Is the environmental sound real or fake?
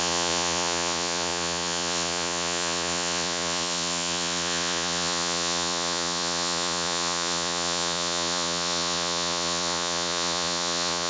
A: fake